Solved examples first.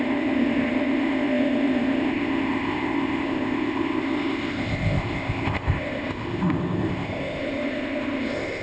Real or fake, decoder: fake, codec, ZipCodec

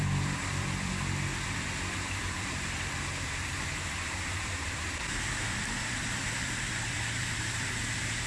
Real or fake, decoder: fake, vocoder, BigVGAN v2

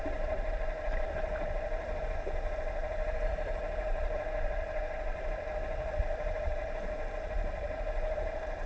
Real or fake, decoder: fake, vocoder, BigVGAN v2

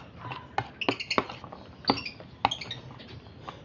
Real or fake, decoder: real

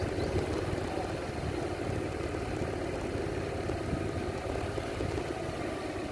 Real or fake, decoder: real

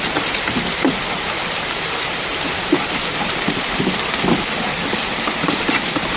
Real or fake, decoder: fake, vocoder, BigVGAN v2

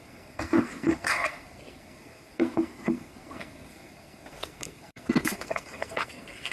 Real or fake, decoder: fake, codec, SNAC